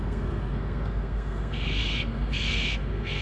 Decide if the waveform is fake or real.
fake